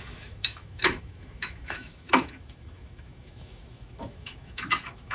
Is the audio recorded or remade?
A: remade